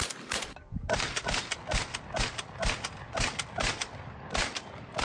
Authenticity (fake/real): real